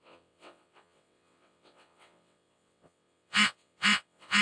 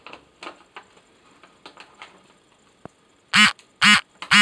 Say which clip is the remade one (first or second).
first